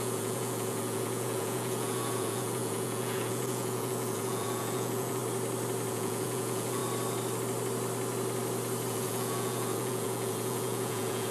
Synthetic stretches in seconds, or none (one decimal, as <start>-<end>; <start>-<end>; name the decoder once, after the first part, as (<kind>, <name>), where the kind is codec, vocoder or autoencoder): 0.0-5.2 (vocoder, Vocos); 5.9-6.8; 8.9-11.3